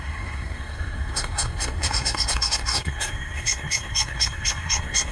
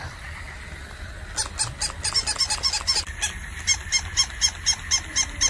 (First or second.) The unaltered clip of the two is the second